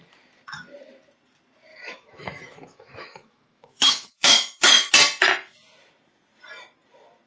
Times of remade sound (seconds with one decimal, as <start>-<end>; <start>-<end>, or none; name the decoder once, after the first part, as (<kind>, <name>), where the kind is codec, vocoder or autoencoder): 1.7-4.9 (autoencoder, DAC-VAE)